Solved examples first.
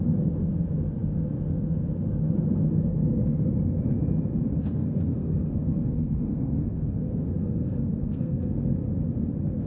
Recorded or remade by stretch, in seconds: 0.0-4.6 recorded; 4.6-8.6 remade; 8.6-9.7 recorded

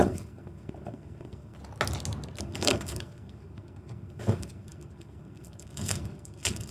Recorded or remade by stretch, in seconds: 0.0-1.6 remade; 1.6-2.4 recorded; 2.4-6.7 remade

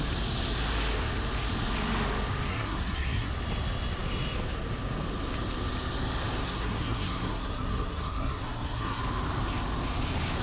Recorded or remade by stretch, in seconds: 0.0-2.5 recorded; 2.5-3.3 remade; 3.3-6.4 recorded; 6.4-9.0 remade; 9.0-10.4 recorded

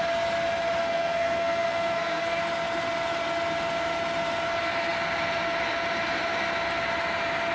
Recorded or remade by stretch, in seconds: 0.0-0.8 recorded; 0.8-2.4 remade; 2.4-7.5 recorded

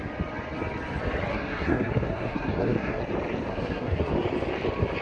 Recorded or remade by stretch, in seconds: 0.0-1.3 recorded; 1.3-3.0 remade; 3.0-3.5 recorded; 3.5-4.1 remade; 4.1-5.0 recorded